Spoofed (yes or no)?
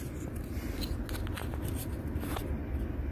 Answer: no